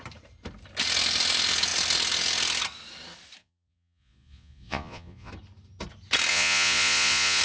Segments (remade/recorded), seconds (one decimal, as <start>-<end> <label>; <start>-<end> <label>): 0.0-3.4 recorded; 3.4-5.3 remade; 5.3-6.3 recorded; 6.3-7.4 remade